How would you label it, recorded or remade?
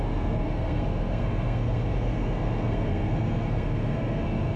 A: remade